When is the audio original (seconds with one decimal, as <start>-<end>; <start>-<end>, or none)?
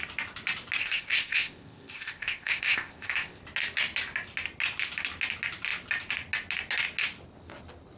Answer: 0.0-0.8; 3.4-8.0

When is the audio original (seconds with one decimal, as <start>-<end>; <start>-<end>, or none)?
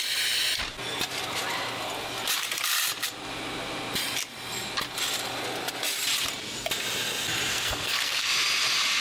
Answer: 0.0-7.5; 8.3-9.0